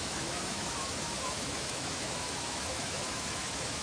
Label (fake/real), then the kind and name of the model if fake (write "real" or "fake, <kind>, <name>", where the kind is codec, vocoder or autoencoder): fake, autoencoder, DAC-VAE